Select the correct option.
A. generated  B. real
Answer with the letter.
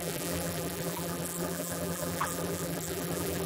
A